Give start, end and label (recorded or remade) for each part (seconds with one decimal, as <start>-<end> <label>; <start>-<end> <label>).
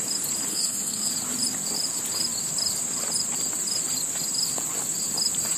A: 0.0-0.5 recorded; 0.5-1.1 remade; 1.1-5.6 recorded